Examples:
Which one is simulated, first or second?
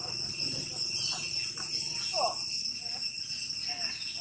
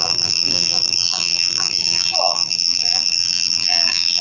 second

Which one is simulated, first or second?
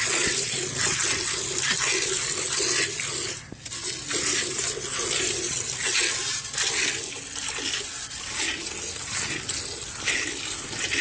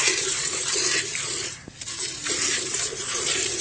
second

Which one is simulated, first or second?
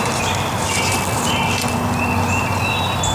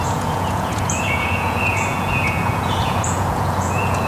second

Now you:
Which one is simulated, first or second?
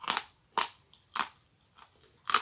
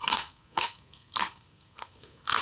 second